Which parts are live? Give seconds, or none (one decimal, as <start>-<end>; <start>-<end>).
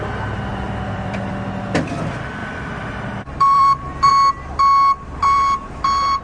0.0-0.5; 1.3-2.4; 4.1-5.1